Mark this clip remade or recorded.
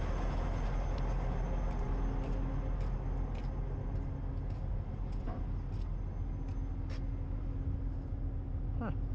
recorded